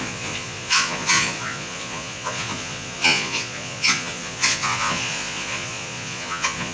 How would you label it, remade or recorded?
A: remade